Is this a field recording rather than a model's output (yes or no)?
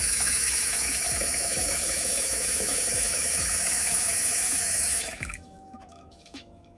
no